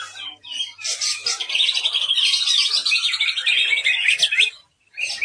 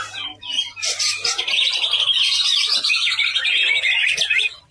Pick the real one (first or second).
first